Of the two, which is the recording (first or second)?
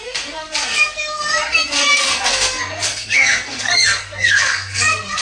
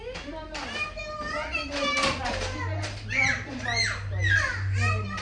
second